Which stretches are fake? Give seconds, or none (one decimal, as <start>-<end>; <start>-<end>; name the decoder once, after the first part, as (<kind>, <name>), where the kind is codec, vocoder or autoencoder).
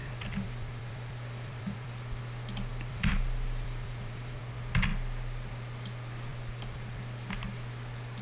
0.0-2.2 (vocoder, BigVGAN v2); 2.7-4.4; 6.3-7.0